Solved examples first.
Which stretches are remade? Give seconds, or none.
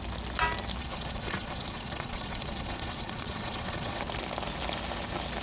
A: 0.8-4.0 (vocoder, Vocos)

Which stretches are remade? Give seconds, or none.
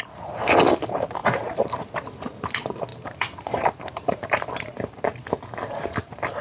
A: 1.2-1.9 (vocoder, BigVGAN v2); 2.9-5.4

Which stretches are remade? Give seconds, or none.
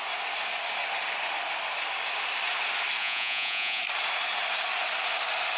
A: 3.0-3.8 (vocoder, Vocos)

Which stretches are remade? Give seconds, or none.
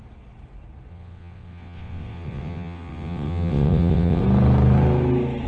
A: 0.9-4.2 (vocoder, WaveNeXt)